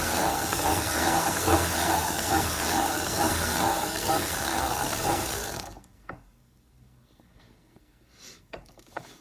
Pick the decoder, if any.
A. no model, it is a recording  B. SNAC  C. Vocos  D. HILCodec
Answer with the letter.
B